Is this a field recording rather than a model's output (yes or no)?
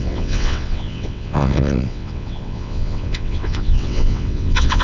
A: no